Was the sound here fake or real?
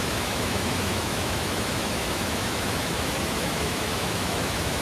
fake